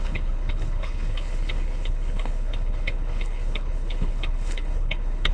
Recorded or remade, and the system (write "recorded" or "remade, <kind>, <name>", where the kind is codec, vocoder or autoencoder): remade, codec, HILCodec